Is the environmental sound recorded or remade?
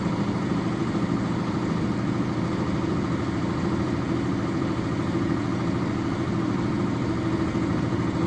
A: remade